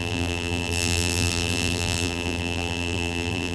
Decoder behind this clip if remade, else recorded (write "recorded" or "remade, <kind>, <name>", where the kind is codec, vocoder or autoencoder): remade, vocoder, BigVGAN v2